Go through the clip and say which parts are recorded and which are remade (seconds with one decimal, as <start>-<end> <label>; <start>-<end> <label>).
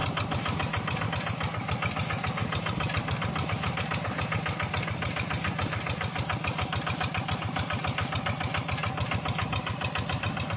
0.0-10.6 recorded